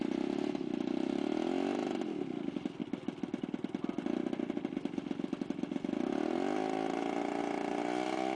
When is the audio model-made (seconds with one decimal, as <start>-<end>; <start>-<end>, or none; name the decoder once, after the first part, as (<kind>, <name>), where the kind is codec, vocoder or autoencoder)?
none